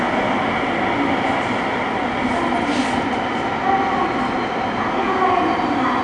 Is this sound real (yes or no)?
yes